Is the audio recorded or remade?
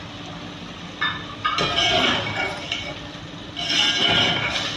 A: recorded